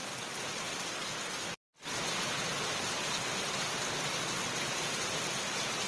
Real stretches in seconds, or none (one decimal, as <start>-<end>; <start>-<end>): 0.0-5.9